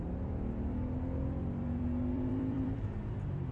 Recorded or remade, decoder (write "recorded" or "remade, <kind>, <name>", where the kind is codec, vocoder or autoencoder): remade, vocoder, BigVGAN v2